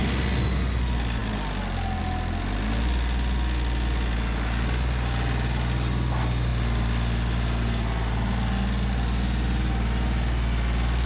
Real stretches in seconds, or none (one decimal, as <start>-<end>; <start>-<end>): 0.0-11.1